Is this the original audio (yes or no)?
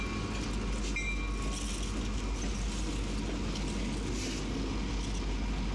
yes